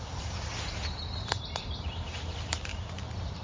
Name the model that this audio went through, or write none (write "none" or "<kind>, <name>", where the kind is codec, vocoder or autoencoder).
vocoder, BigVGAN v2